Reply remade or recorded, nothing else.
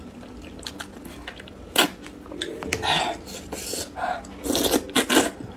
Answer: recorded